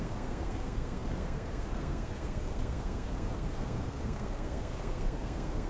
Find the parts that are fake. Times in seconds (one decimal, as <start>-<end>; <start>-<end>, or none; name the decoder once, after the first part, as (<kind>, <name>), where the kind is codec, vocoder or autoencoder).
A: 0.0-5.7 (codec, SNAC)